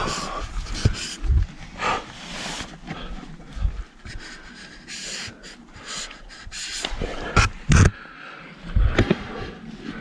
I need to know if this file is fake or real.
real